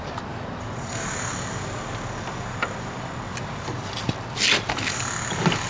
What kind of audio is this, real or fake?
real